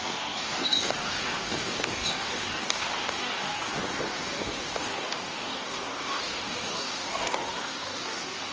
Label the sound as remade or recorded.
remade